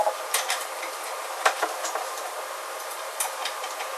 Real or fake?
fake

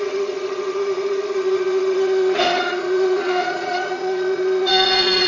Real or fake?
fake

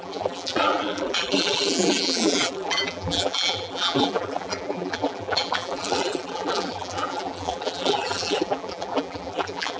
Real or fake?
fake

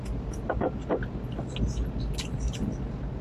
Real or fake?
real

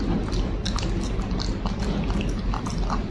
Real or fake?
real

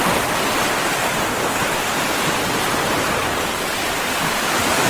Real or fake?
real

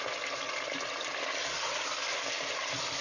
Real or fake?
real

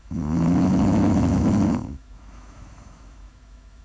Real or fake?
fake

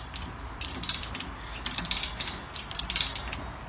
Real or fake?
real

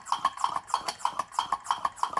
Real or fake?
real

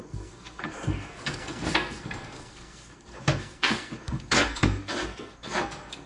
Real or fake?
fake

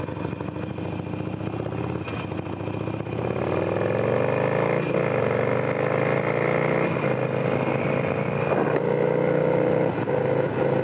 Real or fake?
real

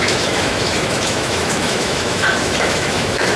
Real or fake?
fake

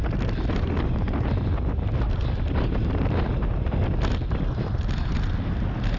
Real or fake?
real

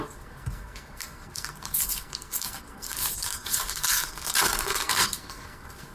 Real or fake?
fake